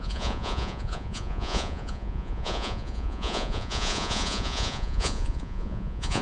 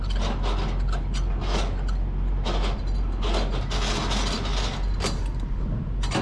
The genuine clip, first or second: second